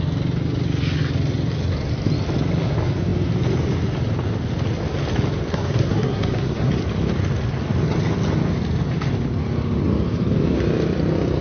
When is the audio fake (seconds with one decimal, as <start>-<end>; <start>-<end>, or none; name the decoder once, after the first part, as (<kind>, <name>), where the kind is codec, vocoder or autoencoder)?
5.5-6.7 (codec, SNAC)